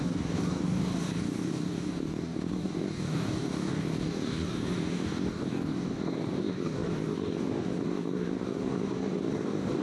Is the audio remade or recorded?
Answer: remade